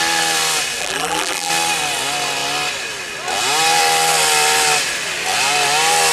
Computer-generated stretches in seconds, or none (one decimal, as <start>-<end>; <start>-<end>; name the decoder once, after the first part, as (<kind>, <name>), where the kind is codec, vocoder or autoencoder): 0.8-1.5 (vocoder, BigVGAN v2)

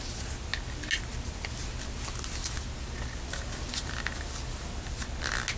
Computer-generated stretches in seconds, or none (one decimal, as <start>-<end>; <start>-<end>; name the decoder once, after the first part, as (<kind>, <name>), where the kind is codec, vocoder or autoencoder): none

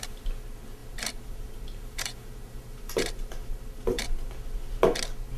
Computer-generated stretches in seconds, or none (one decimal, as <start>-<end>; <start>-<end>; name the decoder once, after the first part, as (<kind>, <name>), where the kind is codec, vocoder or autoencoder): 0.8-4.0 (vocoder, BigVGAN v2)

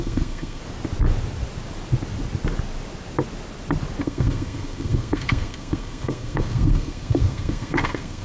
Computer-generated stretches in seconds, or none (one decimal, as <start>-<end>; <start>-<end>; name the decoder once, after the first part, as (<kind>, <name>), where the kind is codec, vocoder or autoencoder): 0.0-0.6 (codec, SNAC); 4.0-8.2

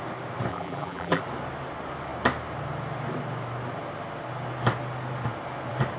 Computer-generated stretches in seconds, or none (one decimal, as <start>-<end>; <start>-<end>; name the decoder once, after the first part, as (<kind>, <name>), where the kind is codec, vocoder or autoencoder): 0.5-1.2 (vocoder, BigVGAN v2)